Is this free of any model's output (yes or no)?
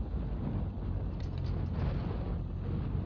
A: yes